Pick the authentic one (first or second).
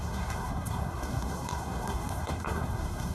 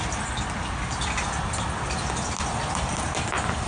second